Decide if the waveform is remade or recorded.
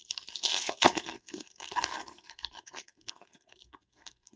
remade